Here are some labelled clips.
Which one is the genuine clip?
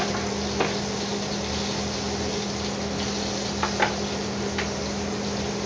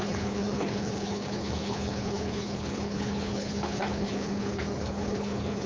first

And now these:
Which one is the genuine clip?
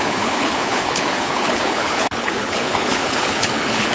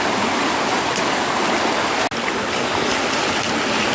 second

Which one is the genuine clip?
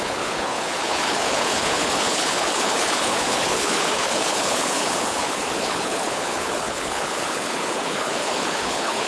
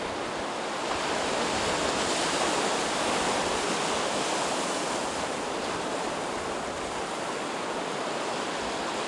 second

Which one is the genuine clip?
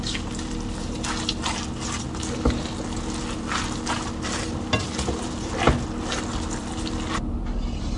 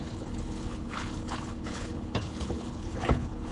first